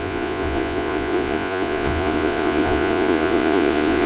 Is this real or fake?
fake